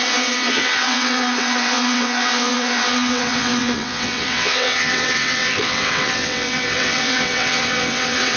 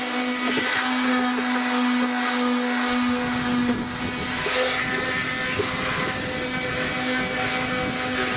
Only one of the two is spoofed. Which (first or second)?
first